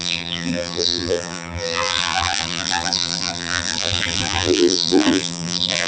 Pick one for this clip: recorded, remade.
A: remade